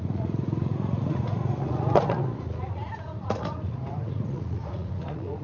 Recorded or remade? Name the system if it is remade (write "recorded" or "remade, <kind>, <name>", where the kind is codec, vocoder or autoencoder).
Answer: remade, vocoder, Vocos